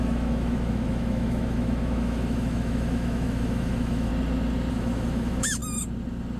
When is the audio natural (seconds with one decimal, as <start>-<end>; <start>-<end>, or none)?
4.1-4.7; 5.6-6.4